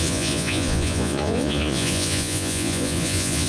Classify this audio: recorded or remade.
remade